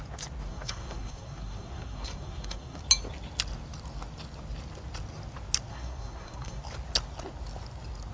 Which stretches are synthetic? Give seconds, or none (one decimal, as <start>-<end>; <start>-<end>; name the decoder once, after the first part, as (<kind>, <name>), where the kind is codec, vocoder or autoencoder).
0.5-2.8 (codec, SNAC); 5.7-6.6